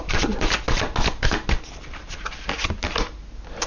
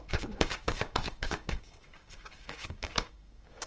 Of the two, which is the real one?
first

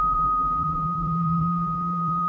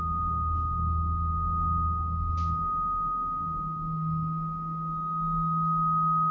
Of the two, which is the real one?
second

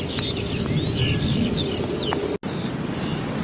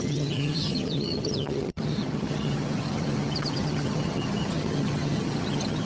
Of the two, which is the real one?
first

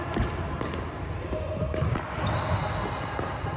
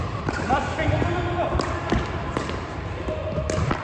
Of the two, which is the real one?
first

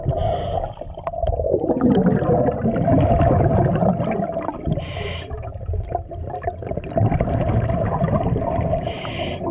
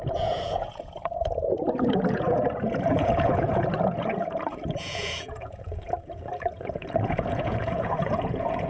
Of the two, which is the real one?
first